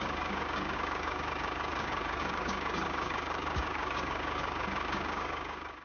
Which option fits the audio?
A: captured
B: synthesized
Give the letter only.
B